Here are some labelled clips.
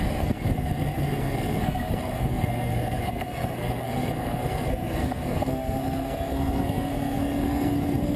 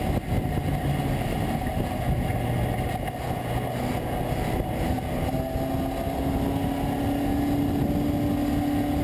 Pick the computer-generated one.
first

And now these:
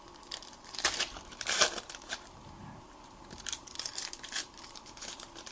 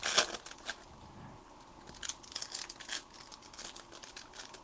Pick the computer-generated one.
first